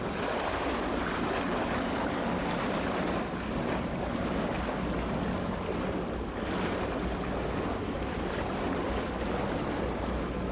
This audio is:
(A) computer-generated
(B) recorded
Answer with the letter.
B